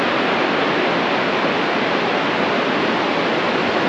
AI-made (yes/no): no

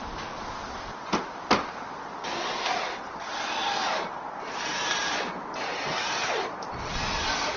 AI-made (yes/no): no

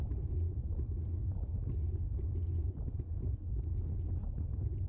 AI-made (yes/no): yes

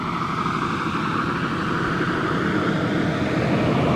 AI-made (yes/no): no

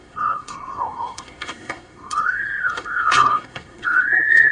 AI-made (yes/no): yes